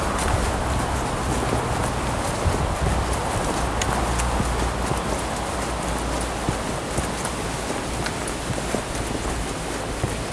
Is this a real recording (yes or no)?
yes